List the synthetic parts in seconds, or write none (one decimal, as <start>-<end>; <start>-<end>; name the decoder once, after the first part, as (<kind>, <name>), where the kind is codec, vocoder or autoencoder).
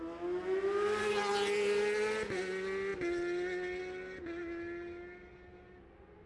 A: none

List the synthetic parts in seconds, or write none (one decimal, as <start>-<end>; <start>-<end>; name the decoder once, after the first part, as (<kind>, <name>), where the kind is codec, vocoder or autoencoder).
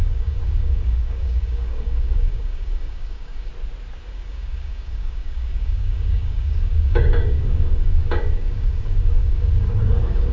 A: 0.0-3.5 (codec, DAC); 4.1-10.3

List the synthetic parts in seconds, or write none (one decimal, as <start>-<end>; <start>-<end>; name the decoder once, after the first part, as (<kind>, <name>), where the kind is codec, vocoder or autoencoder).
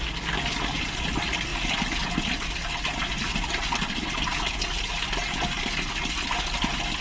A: none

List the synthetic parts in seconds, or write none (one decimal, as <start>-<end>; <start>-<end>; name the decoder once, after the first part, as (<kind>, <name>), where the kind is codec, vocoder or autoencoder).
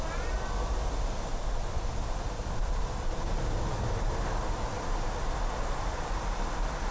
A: 1.3-3.2 (vocoder, BigVGAN v2)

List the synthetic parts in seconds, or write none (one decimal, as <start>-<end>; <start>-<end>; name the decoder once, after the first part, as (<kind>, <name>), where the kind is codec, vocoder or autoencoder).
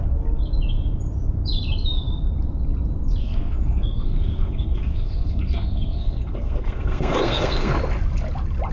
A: 3.2-7.7 (codec, SNAC)